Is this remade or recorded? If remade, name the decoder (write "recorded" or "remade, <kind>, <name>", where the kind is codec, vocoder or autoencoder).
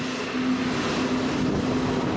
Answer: recorded